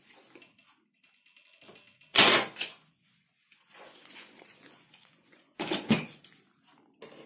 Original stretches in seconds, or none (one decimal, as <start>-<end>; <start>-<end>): 0.0-2.1; 6.2-7.3

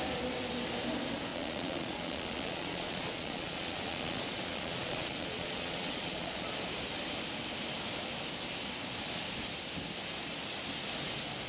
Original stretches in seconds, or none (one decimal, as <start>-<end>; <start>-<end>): 0.0-1.3; 6.5-11.5

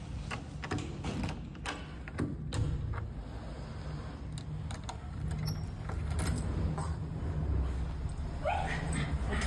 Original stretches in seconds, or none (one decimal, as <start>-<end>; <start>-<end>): 0.0-9.5